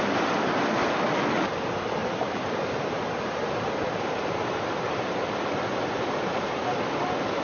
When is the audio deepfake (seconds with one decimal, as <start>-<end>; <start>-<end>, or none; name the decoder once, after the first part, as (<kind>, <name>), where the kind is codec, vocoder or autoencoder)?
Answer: 2.0-5.3 (vocoder, BigVGAN v2)